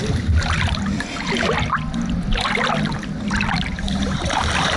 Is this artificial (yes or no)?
no